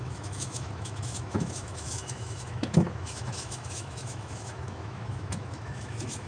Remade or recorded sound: remade